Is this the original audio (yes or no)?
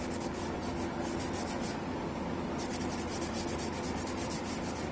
yes